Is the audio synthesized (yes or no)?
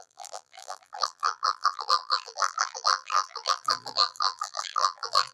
yes